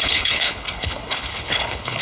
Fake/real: fake